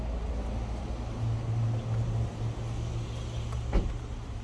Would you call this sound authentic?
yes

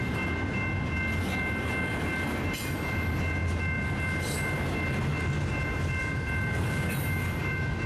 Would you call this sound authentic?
yes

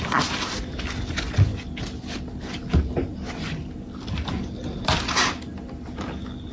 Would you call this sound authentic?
yes